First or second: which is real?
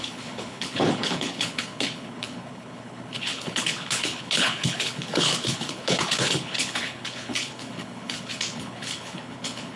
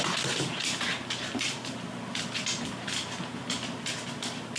second